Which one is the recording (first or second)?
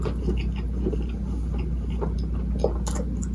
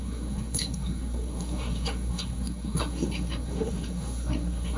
first